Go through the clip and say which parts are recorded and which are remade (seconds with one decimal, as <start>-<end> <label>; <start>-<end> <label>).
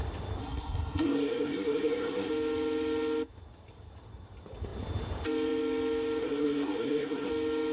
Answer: 0.0-0.4 recorded; 0.4-2.3 remade; 2.3-6.2 recorded; 6.2-7.3 remade; 7.3-7.7 recorded